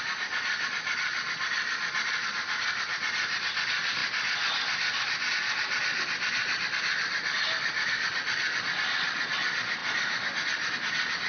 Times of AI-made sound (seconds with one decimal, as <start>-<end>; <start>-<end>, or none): none